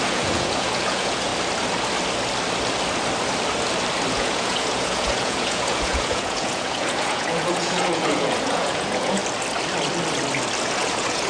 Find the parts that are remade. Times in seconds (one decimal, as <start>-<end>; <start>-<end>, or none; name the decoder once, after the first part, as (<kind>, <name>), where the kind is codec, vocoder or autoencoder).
0.0-1.3 (vocoder, Vocos); 4.1-9.2; 10.6-11.3